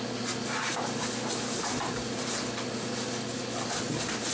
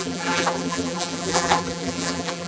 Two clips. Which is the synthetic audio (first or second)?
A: second